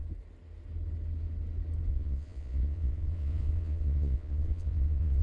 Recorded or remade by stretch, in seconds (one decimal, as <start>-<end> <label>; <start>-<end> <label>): 0.0-1.9 recorded; 1.9-5.2 remade